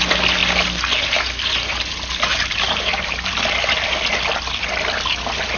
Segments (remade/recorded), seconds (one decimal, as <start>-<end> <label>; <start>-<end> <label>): 0.0-2.3 recorded; 2.3-3.3 remade; 3.3-5.6 recorded